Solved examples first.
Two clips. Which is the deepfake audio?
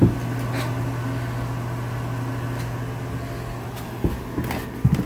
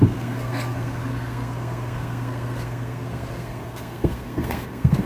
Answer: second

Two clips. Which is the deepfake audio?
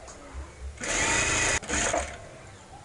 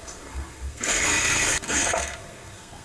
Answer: second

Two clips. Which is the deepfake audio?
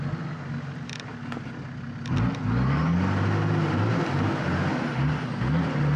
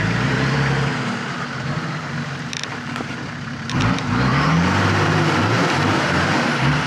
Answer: second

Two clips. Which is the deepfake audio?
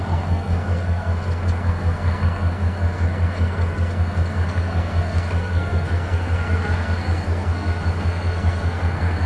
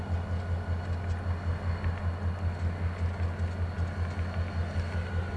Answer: first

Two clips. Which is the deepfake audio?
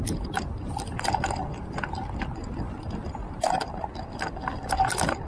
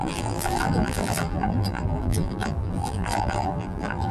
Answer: second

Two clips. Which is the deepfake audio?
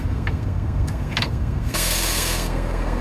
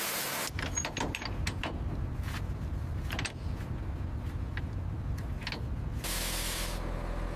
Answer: first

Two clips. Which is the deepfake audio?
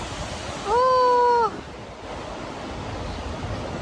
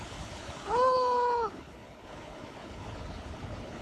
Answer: second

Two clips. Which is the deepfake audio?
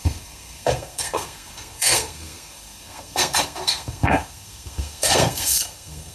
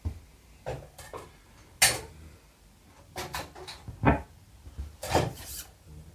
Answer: first